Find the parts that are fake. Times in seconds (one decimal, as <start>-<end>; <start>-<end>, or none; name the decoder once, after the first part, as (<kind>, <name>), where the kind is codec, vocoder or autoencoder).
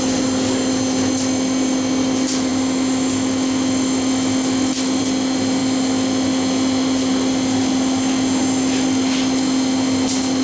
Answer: none